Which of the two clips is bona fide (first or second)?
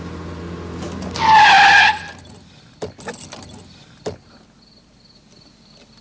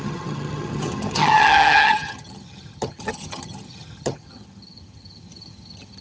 first